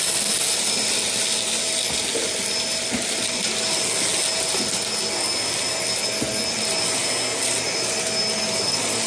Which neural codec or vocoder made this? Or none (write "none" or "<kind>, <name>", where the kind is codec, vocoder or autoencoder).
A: none